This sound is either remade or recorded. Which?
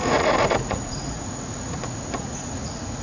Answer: remade